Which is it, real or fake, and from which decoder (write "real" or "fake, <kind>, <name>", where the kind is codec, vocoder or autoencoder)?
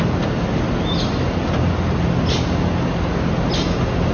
real